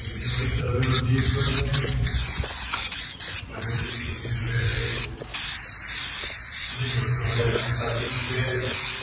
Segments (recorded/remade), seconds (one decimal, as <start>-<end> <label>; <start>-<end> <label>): 0.0-0.7 remade; 0.7-1.2 recorded; 1.2-5.3 remade; 5.3-6.2 recorded; 6.2-9.0 remade

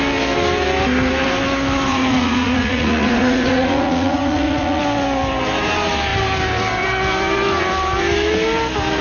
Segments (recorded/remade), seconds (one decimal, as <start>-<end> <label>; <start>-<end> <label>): 0.0-1.9 recorded; 1.9-4.8 remade; 4.8-9.0 recorded

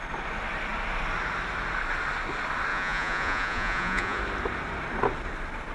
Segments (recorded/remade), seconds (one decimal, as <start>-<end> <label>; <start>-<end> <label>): 0.0-2.7 recorded; 2.7-4.2 remade; 4.2-5.7 recorded

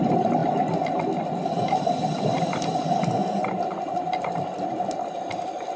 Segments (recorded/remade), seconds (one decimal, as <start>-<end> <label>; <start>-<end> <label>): 0.0-5.8 recorded

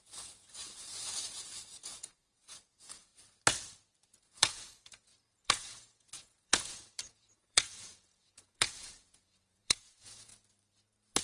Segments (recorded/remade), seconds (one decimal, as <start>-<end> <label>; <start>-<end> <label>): 0.0-3.1 remade; 3.1-4.2 recorded; 4.2-10.3 remade; 10.3-11.2 recorded

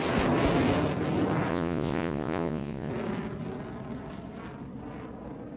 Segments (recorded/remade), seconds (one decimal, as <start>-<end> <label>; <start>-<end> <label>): 0.0-1.5 recorded; 1.5-2.9 remade; 2.9-5.6 recorded

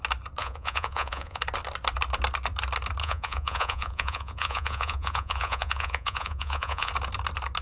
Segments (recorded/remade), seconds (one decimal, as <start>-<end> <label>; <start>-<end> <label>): 0.0-0.4 recorded; 0.4-1.4 remade; 1.4-3.0 recorded; 3.0-6.9 remade; 6.9-7.6 recorded

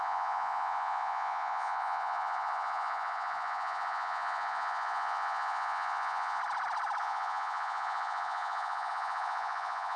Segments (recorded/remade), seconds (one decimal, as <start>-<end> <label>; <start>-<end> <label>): 0.0-6.4 remade; 6.4-7.0 recorded; 7.0-10.0 remade